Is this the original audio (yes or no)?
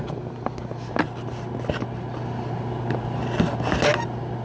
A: yes